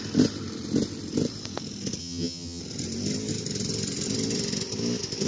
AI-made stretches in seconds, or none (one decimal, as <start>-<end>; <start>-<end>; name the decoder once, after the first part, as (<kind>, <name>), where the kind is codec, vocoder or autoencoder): 2.0-2.6 (vocoder, HiFi-GAN)